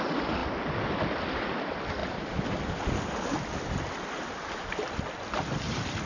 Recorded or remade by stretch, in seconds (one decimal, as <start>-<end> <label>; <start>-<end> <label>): 0.0-2.0 recorded; 2.0-6.1 remade

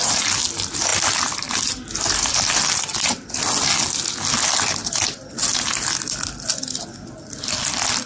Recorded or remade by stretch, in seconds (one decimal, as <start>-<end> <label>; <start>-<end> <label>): 0.0-8.1 recorded